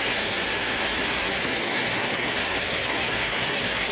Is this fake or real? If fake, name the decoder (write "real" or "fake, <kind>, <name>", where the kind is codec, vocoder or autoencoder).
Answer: fake, codec, SNAC